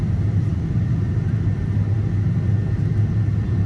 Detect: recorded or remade recorded